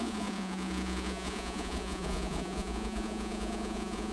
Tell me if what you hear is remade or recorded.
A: remade